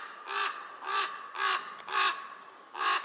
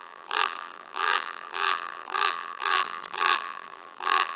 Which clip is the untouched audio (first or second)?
first